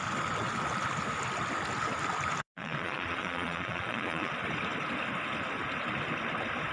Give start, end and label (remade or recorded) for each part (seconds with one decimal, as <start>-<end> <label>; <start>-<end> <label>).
0.0-2.4 recorded; 2.4-4.3 remade; 4.3-6.7 recorded